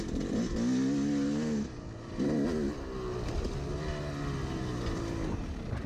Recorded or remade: recorded